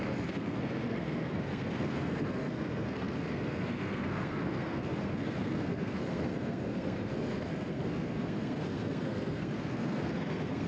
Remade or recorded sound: remade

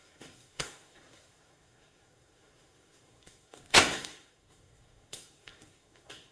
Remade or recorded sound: remade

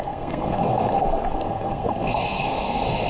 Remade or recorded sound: remade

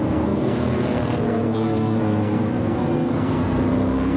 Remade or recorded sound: remade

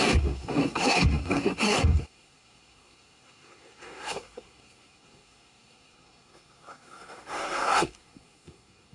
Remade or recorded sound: remade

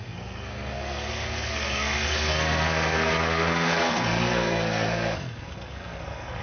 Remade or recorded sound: remade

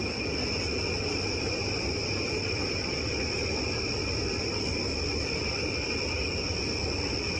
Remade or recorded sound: recorded